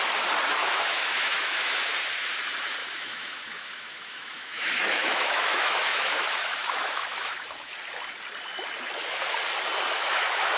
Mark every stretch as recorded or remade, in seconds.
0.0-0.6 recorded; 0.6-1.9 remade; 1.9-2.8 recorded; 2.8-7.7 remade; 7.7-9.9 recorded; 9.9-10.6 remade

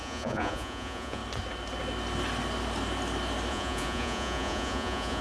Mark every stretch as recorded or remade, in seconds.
0.0-1.2 remade; 1.2-3.5 recorded; 3.5-5.2 remade

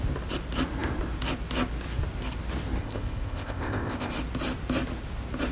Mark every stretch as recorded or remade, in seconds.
0.0-2.8 recorded; 2.8-4.1 remade; 4.1-5.5 recorded

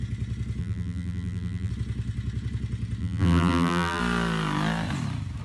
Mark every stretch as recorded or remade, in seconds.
0.0-0.6 recorded; 0.6-1.7 remade; 1.7-3.0 recorded; 3.0-4.0 remade; 4.0-5.4 recorded

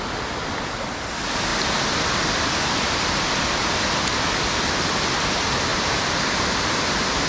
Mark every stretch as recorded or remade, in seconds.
0.0-1.5 recorded; 1.5-4.4 remade; 4.4-5.7 recorded; 5.7-7.3 remade